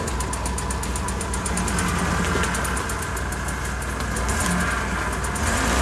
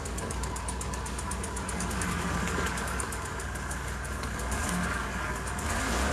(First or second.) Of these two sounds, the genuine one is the first